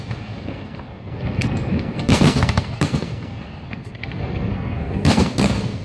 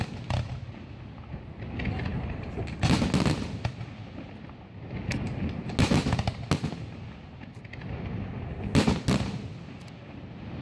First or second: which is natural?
second